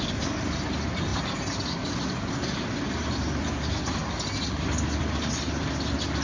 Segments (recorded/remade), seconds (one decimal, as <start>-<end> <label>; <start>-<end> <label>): 0.0-6.2 recorded